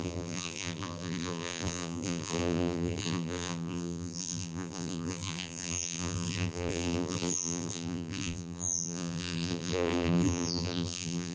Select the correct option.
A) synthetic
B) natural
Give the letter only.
A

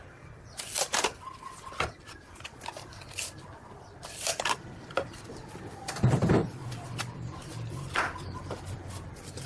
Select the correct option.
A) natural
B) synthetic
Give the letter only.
A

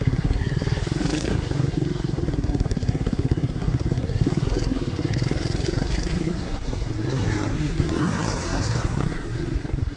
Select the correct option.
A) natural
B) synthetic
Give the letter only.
B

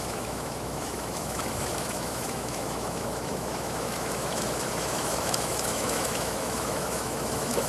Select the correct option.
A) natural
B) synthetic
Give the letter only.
B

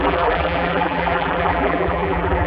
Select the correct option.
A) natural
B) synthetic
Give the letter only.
B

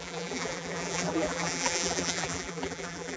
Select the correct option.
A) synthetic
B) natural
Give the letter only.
A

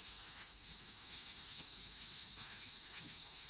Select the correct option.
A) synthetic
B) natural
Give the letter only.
A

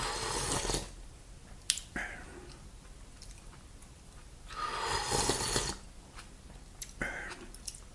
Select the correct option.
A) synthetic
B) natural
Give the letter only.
B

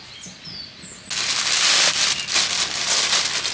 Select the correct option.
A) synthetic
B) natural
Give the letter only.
B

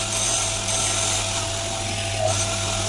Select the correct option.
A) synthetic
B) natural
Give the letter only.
B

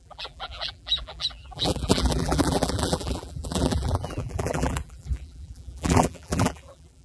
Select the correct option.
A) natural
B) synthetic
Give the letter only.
B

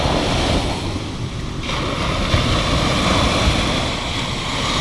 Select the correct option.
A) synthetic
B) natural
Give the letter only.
B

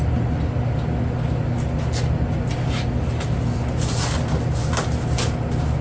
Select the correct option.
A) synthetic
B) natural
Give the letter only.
B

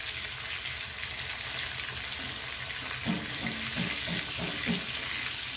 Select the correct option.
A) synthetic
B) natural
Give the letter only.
B